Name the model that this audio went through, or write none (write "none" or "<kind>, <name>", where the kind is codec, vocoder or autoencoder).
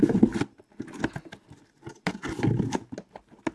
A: none